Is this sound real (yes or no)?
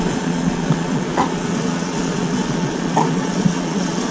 no